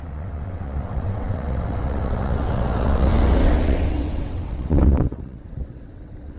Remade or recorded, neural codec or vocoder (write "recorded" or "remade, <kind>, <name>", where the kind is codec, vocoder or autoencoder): remade, vocoder, WaveNeXt